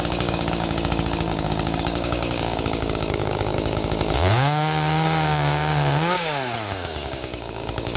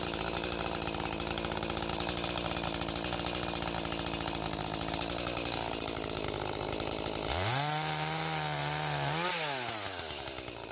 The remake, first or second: first